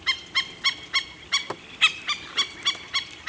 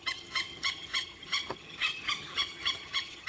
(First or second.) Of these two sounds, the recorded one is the first